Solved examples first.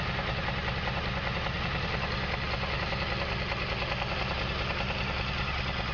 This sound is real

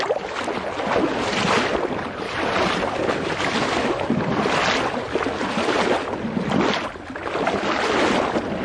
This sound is real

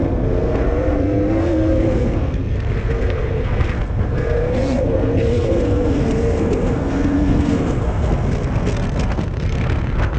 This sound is fake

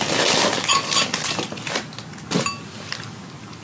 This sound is real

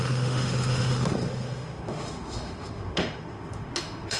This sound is fake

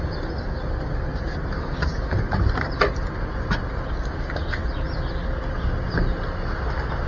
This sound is real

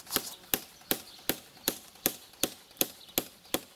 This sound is real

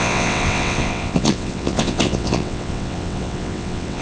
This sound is fake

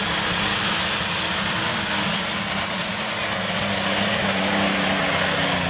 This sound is real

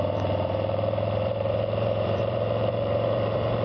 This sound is fake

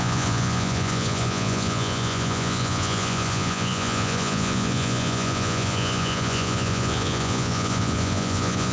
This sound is fake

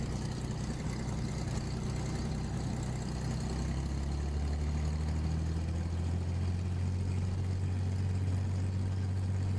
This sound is real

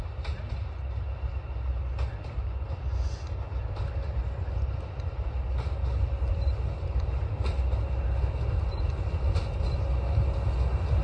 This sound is real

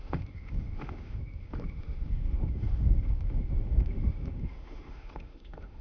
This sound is fake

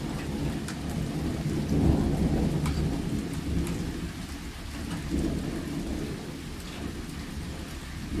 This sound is real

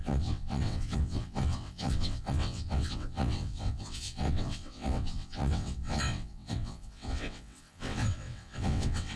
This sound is fake